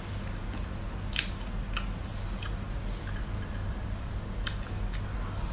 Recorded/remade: recorded